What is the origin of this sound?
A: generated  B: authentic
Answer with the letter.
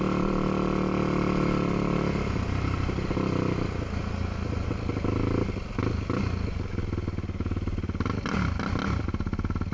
B